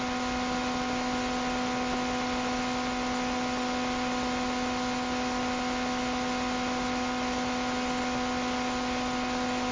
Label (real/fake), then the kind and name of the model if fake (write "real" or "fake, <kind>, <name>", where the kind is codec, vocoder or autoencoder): real